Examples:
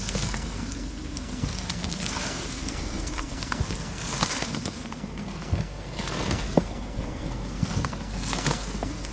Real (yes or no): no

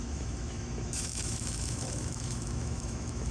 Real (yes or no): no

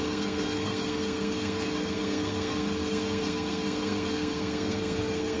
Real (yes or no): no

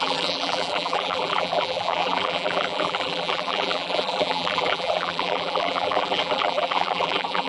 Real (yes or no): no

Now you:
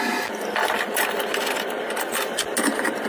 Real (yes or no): yes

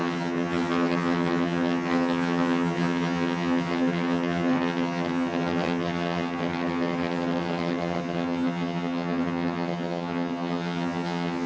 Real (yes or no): no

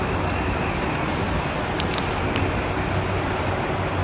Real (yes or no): yes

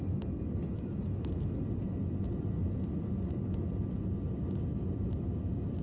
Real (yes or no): yes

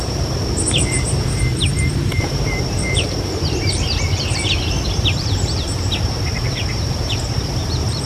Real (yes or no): no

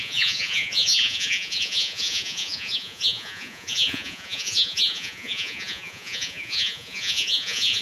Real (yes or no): no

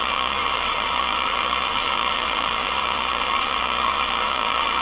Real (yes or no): no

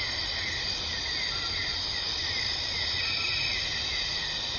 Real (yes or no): yes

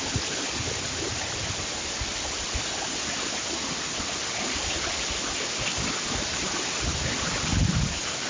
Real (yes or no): yes